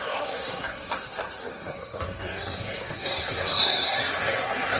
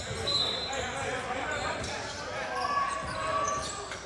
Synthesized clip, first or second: first